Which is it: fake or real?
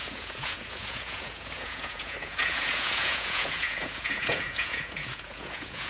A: fake